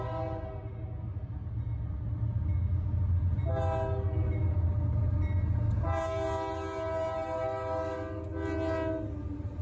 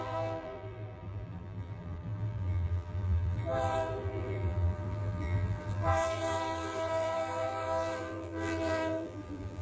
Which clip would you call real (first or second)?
first